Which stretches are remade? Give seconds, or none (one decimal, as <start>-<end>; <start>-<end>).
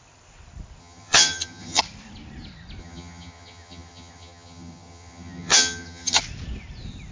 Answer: 0.8-1.8; 2.8-6.2